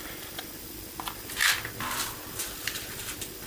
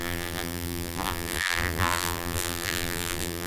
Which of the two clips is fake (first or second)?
second